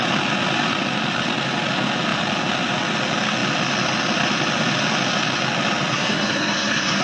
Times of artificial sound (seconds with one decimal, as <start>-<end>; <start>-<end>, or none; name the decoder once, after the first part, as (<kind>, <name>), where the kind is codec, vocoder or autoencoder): 5.9-7.0 (codec, SNAC)